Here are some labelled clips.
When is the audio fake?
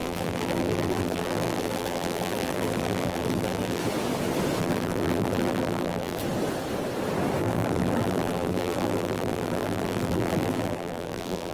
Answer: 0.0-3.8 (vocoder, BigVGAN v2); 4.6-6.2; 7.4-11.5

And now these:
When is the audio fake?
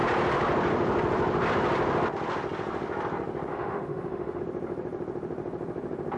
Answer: 3.5-4.4 (autoencoder, DAC-VAE)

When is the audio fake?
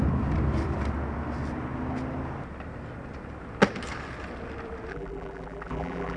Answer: 4.9-6.2 (vocoder, BigVGAN v2)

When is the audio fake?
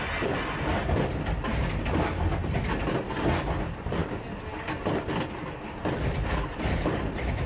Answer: none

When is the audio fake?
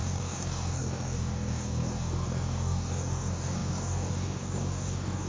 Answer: 0.0-5.3 (codec, DAC)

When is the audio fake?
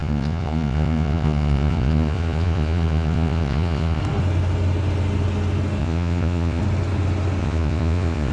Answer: 0.0-4.0 (vocoder, Vocos); 5.8-6.6; 7.4-8.3